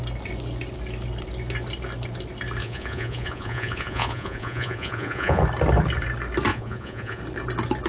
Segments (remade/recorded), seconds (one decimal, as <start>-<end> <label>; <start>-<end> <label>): 0.0-2.6 recorded; 2.6-5.4 remade; 5.4-6.5 recorded; 6.5-7.2 remade; 7.2-7.9 recorded